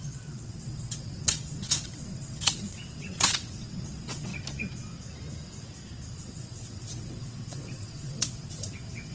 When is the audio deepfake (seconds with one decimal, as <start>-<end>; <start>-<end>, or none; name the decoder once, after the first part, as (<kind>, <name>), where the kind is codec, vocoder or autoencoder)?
0.0-4.3 (vocoder, WaveNeXt); 6.1-9.1